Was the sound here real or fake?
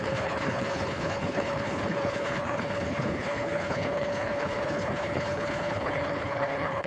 fake